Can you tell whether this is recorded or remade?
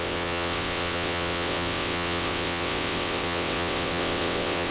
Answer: remade